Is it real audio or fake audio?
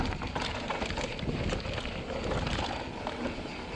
real